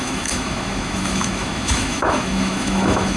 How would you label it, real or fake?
fake